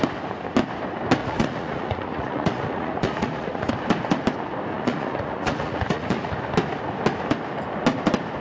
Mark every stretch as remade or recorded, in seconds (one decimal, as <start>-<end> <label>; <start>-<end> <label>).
0.0-1.2 recorded; 1.2-3.7 remade; 3.7-4.7 recorded; 4.7-6.3 remade; 6.3-8.4 recorded